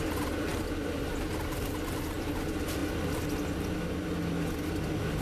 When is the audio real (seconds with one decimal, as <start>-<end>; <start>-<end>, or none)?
0.0-5.2